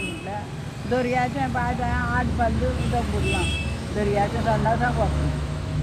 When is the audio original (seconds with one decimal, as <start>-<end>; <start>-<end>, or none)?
0.0-2.0